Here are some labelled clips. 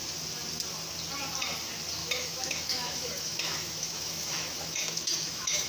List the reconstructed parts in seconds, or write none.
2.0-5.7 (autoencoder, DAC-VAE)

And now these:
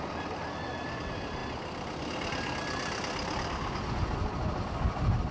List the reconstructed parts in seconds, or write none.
none

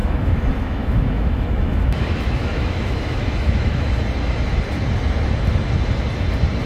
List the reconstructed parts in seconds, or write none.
0.0-4.0 (autoencoder, DAC-VAE)

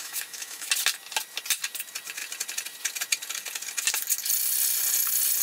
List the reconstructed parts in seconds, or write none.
0.0-0.7 (autoencoder, DAC-VAE)

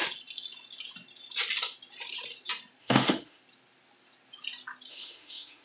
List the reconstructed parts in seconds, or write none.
2.8-3.4 (autoencoder, DAC-VAE); 4.9-5.6

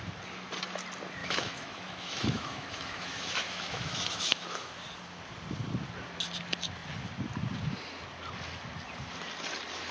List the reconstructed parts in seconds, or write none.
1.2-4.7 (autoencoder, DAC-VAE)

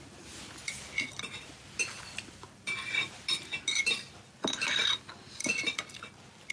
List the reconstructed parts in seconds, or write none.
none

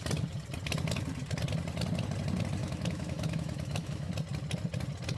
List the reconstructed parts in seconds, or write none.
2.6-4.1 (autoencoder, DAC-VAE)